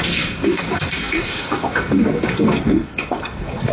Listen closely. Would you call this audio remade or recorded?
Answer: remade